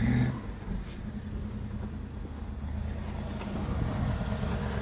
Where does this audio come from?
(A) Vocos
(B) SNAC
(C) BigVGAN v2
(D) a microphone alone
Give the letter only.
D